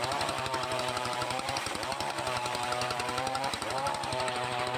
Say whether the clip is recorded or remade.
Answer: remade